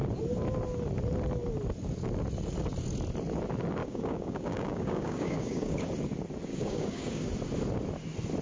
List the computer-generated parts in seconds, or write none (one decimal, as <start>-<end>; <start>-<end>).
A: 3.8-5.9; 6.5-7.3